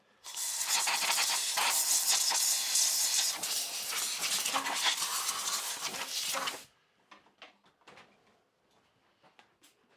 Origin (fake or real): real